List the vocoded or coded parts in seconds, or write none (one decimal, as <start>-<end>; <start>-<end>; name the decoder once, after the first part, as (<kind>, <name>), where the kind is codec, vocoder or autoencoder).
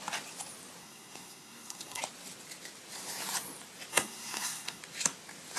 0.8-2.0 (codec, SNAC); 3.9-4.8